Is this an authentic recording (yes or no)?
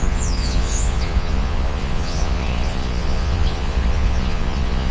no